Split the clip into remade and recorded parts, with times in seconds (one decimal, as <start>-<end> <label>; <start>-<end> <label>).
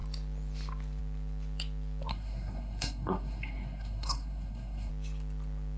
0.0-2.1 recorded; 2.1-4.9 remade; 4.9-5.8 recorded